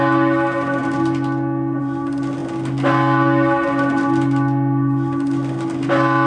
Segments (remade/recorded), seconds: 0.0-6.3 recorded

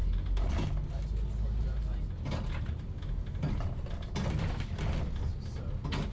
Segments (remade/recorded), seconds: 0.0-6.1 recorded

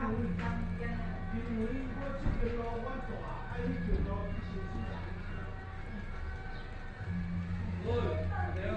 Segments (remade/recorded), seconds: 0.0-8.8 recorded

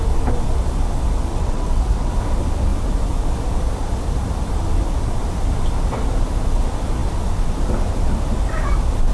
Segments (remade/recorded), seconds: 0.0-1.3 recorded; 1.3-2.1 remade; 2.1-9.1 recorded

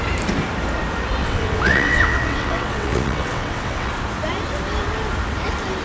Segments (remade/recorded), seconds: 0.0-1.2 recorded; 1.2-3.9 remade; 3.9-5.8 recorded

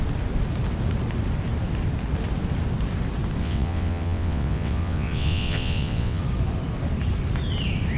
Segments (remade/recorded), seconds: 0.0-3.4 recorded; 3.4-6.2 remade; 6.2-8.0 recorded

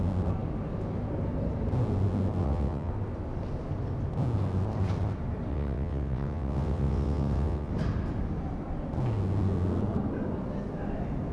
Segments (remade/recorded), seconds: 0.0-2.4 recorded; 2.4-2.9 remade; 2.9-5.5 recorded; 5.5-7.7 remade; 7.7-11.3 recorded